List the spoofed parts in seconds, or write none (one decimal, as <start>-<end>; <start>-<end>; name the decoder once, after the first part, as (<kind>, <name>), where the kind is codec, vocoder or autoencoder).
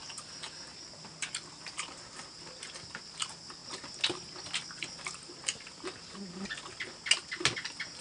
none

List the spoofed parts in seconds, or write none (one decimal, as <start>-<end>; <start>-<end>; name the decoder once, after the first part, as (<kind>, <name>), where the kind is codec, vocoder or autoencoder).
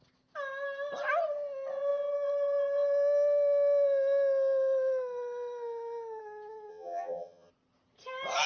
6.7-7.5 (vocoder, HiFi-GAN)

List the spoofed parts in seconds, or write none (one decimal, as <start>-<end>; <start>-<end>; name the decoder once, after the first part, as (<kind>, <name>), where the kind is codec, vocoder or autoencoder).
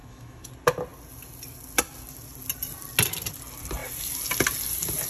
0.0-0.5 (autoencoder, DAC-VAE)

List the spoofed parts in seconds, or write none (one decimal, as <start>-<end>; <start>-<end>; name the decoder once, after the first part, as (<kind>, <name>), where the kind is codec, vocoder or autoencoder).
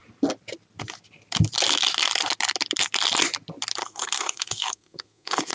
3.8-5.5 (codec, SNAC)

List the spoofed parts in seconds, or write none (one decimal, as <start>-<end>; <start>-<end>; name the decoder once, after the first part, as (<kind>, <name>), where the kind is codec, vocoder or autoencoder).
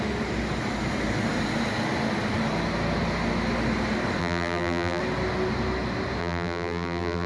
4.2-5.0 (vocoder, BigVGAN v2); 6.2-7.3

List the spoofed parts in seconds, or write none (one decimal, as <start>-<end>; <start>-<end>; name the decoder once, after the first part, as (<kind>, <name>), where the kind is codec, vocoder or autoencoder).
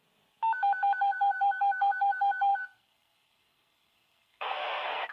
1.0-5.1 (codec, SNAC)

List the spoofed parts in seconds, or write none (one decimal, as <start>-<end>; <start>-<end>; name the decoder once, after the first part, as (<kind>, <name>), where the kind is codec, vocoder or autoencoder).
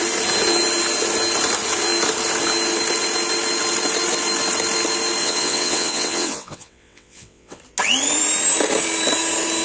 5.2-7.6 (vocoder, WaveNeXt)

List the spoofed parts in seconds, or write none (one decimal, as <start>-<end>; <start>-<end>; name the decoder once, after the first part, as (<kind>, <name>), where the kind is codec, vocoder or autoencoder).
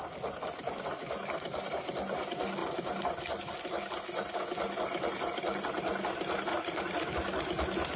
6.5-7.1 (vocoder, Vocos)